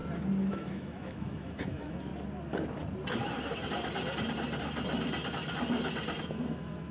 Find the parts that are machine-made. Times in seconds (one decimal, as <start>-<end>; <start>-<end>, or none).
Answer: 0.5-2.1; 6.2-6.9